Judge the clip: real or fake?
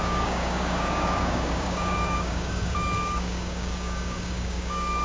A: fake